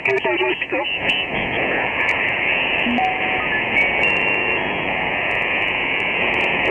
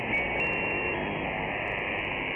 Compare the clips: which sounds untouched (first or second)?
second